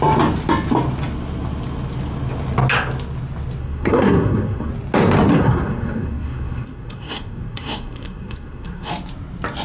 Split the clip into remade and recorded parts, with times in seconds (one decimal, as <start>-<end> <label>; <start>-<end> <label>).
0.0-3.6 recorded; 3.6-4.7 remade; 4.7-5.3 recorded; 5.3-8.9 remade; 8.9-9.6 recorded